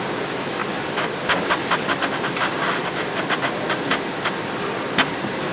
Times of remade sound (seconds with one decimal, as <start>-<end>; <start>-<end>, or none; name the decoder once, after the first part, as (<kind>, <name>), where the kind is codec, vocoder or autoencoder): none